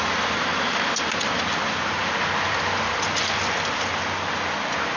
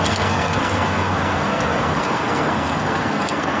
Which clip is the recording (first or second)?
first